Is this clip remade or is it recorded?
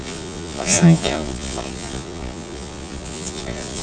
remade